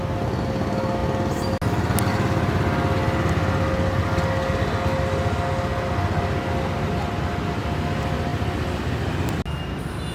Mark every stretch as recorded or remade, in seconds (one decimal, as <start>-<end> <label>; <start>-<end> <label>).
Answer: 0.0-8.3 recorded; 8.3-8.8 remade; 8.8-10.1 recorded